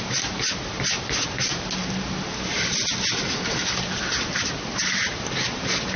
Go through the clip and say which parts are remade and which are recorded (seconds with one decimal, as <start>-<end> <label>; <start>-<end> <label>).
0.0-6.0 recorded